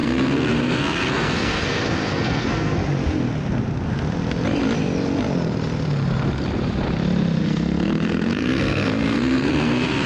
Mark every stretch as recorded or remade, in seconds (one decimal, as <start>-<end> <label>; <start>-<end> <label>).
0.0-2.8 remade; 2.8-7.4 recorded; 7.4-10.1 remade